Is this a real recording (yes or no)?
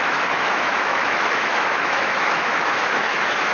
no